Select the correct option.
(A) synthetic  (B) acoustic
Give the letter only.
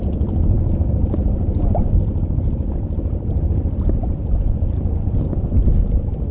A